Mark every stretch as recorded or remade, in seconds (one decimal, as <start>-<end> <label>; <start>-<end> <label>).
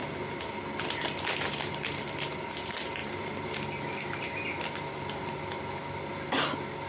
0.0-0.8 recorded; 0.8-6.9 remade